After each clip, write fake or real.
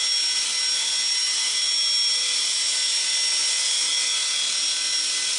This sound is real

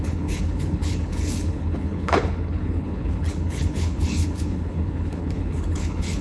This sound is fake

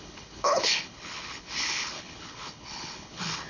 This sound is fake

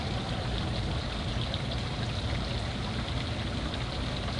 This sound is real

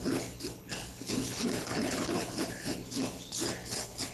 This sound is fake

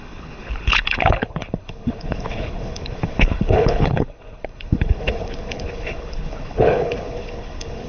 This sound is fake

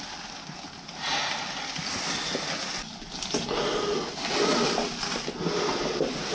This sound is real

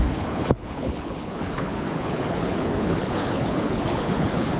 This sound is fake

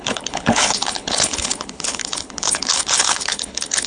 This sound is fake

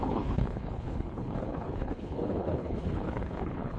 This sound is fake